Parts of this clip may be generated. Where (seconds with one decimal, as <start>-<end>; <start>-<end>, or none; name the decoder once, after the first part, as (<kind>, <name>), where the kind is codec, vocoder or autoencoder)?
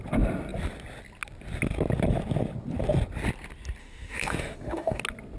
3.8-5.0 (autoencoder, DAC-VAE)